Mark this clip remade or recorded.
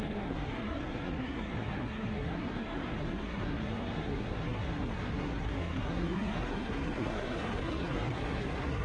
remade